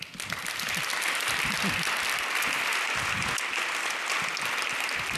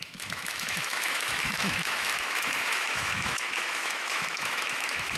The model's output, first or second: second